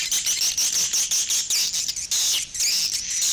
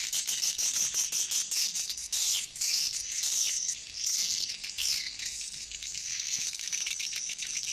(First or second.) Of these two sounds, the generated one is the second